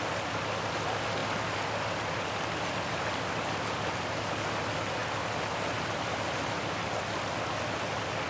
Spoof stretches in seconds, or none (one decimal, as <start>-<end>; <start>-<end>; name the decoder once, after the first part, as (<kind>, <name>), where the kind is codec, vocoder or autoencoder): none